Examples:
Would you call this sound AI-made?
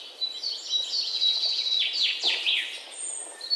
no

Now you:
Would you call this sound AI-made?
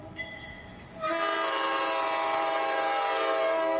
no